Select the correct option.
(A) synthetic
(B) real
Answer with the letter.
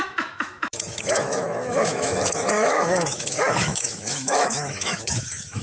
A